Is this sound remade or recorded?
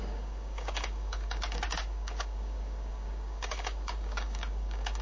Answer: remade